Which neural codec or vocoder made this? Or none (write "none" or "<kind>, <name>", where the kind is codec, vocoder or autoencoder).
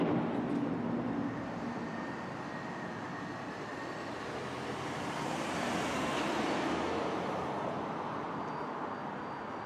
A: none